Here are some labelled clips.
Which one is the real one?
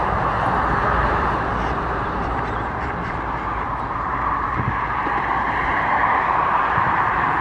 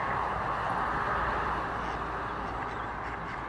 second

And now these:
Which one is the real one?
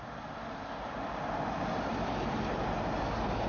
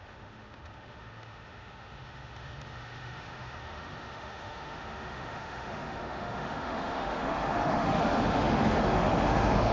first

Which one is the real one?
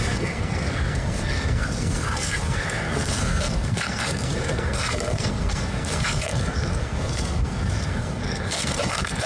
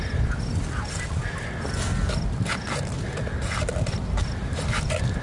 second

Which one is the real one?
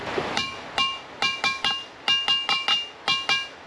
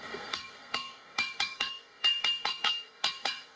first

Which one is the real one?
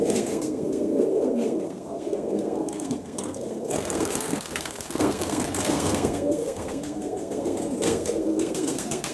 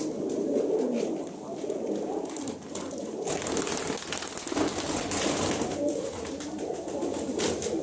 second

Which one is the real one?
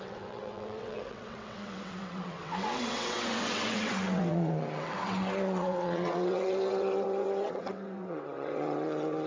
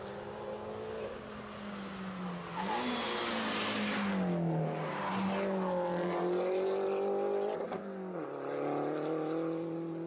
second